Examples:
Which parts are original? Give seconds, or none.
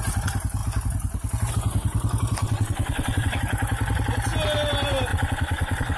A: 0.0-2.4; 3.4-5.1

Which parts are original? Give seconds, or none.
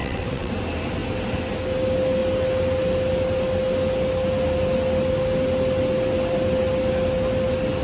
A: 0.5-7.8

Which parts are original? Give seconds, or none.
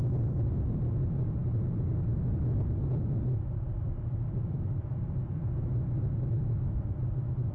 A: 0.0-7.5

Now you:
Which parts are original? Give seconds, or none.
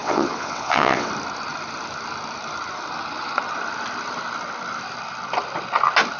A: 1.1-6.2